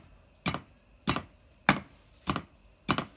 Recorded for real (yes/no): yes